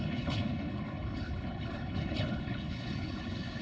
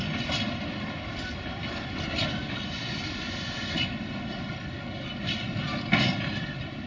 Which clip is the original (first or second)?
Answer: second